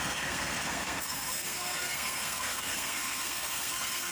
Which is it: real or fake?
fake